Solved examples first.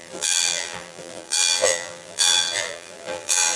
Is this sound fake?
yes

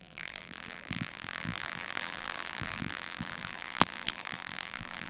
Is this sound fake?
yes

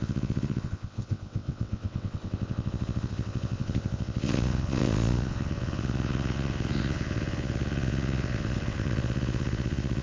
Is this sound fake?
yes